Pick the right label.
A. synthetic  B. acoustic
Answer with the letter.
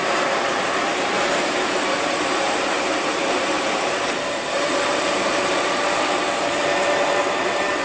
A